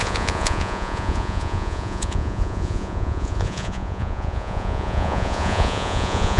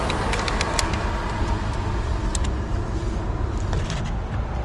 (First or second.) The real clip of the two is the second